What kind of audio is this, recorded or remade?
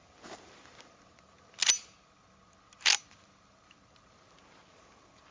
recorded